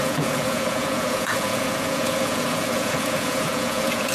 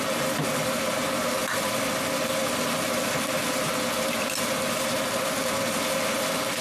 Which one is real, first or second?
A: second